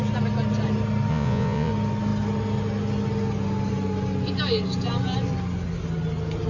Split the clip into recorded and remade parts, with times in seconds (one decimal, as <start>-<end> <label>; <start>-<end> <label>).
0.0-1.1 recorded; 1.1-1.7 remade; 1.7-6.5 recorded